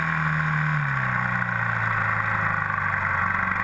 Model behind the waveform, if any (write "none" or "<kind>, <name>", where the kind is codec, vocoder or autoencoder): none